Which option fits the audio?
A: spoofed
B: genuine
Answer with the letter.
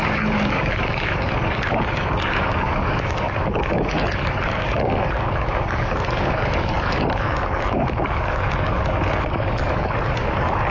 A